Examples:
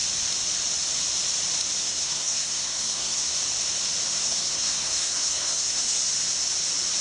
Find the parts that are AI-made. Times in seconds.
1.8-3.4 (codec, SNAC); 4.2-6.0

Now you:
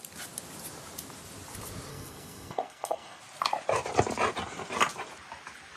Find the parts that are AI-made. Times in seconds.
1.9-3.2 (codec, SNAC)

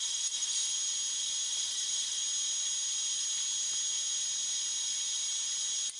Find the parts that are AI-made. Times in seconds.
0.0-0.6 (vocoder, BigVGAN v2); 1.5-2.2

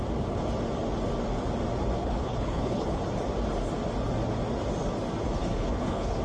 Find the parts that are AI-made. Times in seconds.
2.0-3.0 (codec, HILCodec); 5.4-6.2